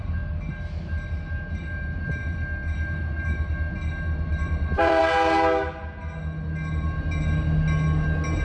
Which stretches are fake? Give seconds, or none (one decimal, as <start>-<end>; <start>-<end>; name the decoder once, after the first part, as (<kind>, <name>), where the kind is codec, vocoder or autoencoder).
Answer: 4.3-5.0 (vocoder, BigVGAN v2)

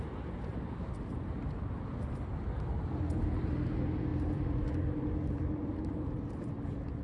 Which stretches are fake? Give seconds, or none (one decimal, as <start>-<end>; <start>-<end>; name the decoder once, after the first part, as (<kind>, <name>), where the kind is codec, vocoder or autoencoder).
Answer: 0.5-2.3 (vocoder, BigVGAN v2); 4.1-6.3

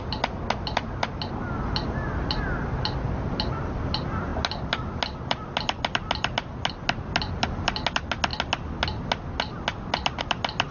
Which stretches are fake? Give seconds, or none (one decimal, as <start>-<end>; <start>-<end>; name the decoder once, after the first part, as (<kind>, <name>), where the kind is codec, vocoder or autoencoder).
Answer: none